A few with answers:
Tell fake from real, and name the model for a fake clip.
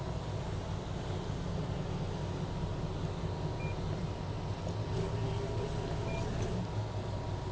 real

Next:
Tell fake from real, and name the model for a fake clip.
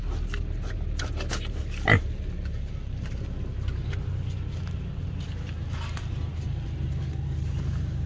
real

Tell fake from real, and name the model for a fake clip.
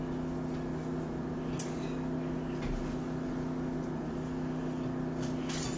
real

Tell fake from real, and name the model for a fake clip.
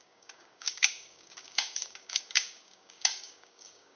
fake, codec, DAC